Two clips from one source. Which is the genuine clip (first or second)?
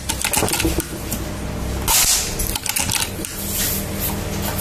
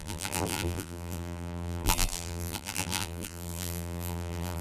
first